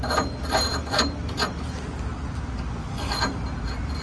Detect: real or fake real